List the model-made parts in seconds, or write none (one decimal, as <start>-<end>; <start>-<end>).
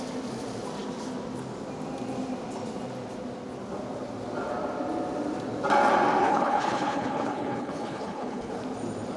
6.2-8.5